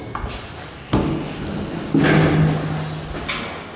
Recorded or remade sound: recorded